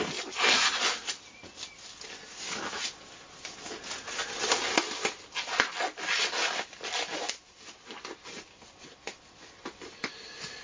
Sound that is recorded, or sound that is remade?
recorded